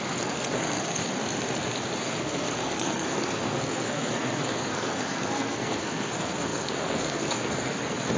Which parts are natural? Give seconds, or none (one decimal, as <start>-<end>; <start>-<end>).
1.0-2.0